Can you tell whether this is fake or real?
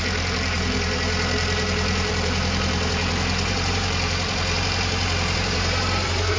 fake